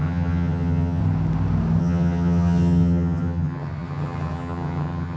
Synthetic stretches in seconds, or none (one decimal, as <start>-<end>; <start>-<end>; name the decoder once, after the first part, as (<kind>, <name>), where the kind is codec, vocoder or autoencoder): 0.0-1.0 (vocoder, HiFi-GAN); 1.8-5.2